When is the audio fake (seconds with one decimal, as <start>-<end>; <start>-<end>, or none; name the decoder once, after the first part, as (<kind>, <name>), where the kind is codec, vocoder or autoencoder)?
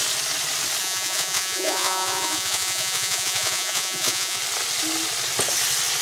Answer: 0.8-4.4 (vocoder, Vocos)